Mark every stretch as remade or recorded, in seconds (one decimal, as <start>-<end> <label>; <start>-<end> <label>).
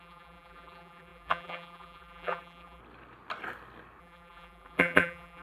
0.0-2.8 remade; 2.8-4.0 recorded; 4.0-5.4 remade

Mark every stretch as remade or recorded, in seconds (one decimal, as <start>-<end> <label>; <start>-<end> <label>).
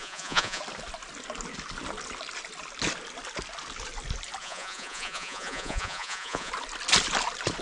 0.0-0.6 remade; 0.6-4.4 recorded; 4.4-6.5 remade; 6.5-7.6 recorded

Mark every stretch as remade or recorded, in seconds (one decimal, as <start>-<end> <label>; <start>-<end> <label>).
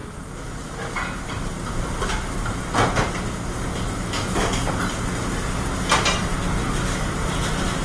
0.0-7.8 recorded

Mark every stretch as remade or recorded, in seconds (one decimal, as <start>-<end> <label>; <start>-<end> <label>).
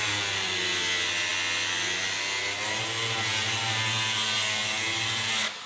0.0-5.7 recorded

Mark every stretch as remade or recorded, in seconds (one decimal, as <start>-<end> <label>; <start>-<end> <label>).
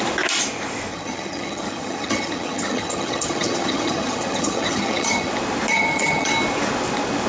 0.0-0.9 recorded; 0.9-5.3 remade; 5.3-5.7 recorded; 5.7-6.3 remade; 6.3-7.3 recorded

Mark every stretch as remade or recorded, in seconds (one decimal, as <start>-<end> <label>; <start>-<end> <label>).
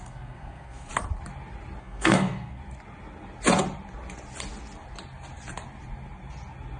0.0-0.9 remade; 0.9-1.8 recorded; 1.8-2.6 remade; 2.6-6.8 recorded